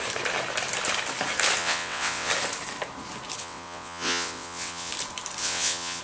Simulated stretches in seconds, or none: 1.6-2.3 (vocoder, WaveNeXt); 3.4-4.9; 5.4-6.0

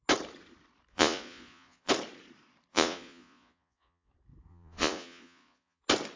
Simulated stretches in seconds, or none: 0.9-1.9 (vocoder, Vocos); 2.7-4.1; 4.5-5.8

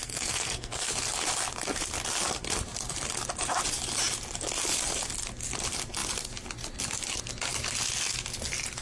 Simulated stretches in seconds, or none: 0.0-0.9 (codec, SNAC)

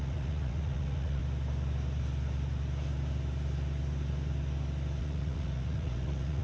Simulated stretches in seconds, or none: 0.0-1.2 (vocoder, Vocos); 5.0-6.4

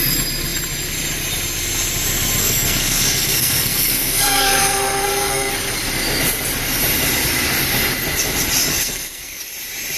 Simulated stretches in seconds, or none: 2.4-5.5 (codec, SNAC); 8.7-9.4

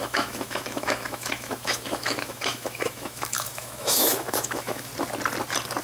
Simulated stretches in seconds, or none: 0.0-4.9 (autoencoder, DAC-VAE)